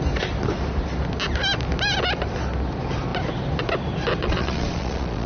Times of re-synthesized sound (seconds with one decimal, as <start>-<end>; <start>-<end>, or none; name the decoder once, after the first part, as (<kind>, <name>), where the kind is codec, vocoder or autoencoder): 4.2-5.3 (vocoder, Vocos)